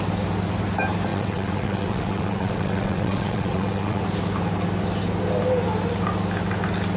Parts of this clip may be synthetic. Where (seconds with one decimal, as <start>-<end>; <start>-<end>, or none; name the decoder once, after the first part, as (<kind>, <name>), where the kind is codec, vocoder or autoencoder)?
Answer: 1.1-4.0 (vocoder, WaveNeXt)